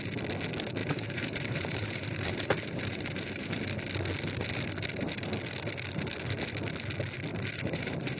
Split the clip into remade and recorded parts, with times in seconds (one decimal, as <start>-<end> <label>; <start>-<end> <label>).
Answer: 0.0-0.8 recorded; 0.8-3.6 remade; 3.6-7.3 recorded; 7.3-8.2 remade